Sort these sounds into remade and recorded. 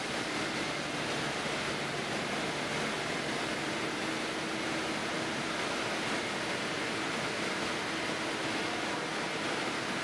recorded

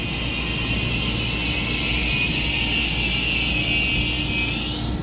recorded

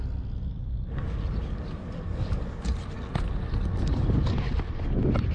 recorded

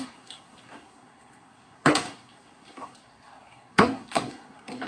remade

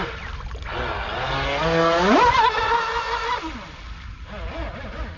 recorded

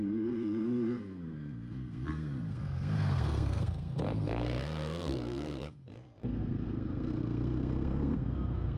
remade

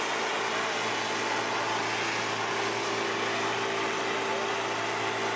recorded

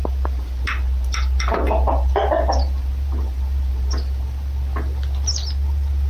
recorded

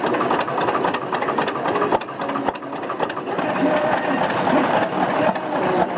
recorded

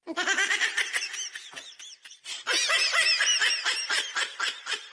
recorded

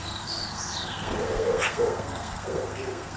remade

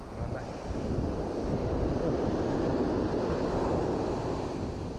recorded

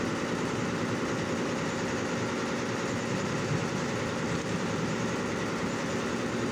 recorded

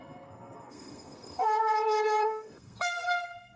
remade